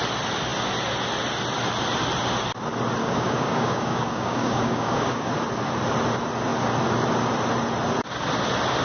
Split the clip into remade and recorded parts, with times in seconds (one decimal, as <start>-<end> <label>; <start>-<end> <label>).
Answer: 0.0-3.0 recorded; 3.0-5.3 remade; 5.3-8.8 recorded